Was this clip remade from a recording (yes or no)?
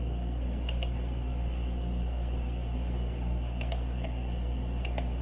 yes